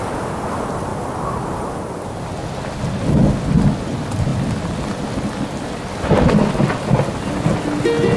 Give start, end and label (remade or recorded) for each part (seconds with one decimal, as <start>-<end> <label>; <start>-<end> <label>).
0.0-8.2 recorded